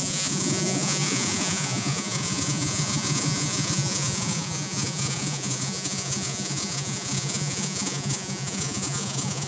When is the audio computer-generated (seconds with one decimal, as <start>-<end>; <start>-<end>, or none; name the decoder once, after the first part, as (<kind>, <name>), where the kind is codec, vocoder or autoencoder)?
0.0-9.5 (vocoder, Vocos)